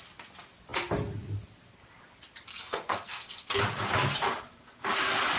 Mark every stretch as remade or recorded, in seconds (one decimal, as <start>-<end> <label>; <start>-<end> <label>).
0.0-2.5 recorded; 2.5-3.6 remade; 3.6-5.4 recorded